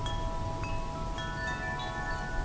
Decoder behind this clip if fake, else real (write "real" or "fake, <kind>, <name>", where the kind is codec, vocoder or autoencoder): real